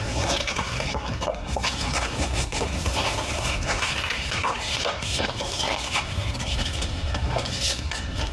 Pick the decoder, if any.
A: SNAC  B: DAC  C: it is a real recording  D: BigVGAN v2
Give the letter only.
A